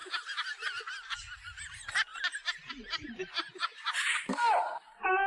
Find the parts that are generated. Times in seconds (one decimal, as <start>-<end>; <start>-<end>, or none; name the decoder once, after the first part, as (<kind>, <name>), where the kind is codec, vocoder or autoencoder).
0.0-0.8 (vocoder, BigVGAN v2); 2.1-2.7; 3.2-4.7